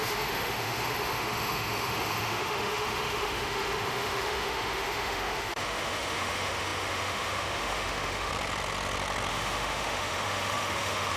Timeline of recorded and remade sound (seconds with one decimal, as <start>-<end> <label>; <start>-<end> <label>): 0.0-8.3 remade; 8.3-9.3 recorded; 9.3-11.2 remade